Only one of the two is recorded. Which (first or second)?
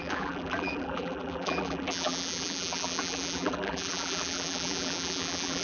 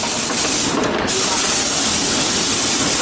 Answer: second